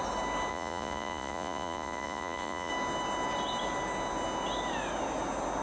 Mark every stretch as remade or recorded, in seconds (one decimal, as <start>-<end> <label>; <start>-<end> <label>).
0.0-0.5 recorded; 0.5-2.7 remade; 2.7-5.6 recorded